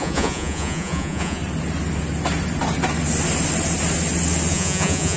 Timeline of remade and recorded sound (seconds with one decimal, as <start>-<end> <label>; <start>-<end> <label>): 0.0-1.4 remade; 1.4-4.5 recorded; 4.5-5.2 remade